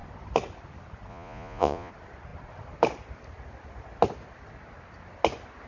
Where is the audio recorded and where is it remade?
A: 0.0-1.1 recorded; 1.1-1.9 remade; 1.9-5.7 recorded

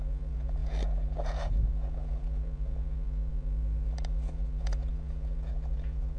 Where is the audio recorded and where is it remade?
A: 0.0-6.2 remade

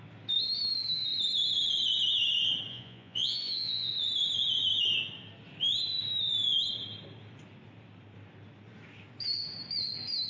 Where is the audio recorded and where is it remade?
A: 0.0-2.7 recorded; 2.7-3.9 remade; 3.9-10.3 recorded

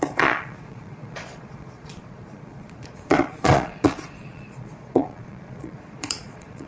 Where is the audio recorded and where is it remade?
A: 0.0-6.7 remade

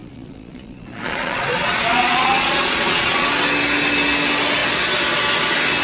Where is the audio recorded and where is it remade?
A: 0.0-3.3 remade; 3.3-5.8 recorded

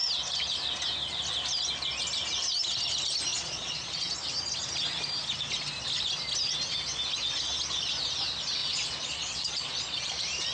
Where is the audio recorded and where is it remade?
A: 0.0-3.3 recorded; 3.3-4.1 remade; 4.1-8.6 recorded; 8.6-10.1 remade; 10.1-10.5 recorded

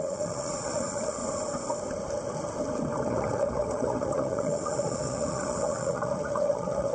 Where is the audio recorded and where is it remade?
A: 0.0-1.2 remade; 1.2-3.1 recorded; 3.1-6.9 remade